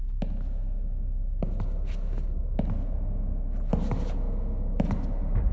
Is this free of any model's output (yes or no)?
yes